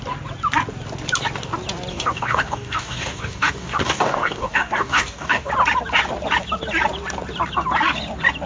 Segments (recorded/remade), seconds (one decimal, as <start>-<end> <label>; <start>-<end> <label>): 0.0-1.9 recorded; 1.9-5.5 remade; 5.5-8.5 recorded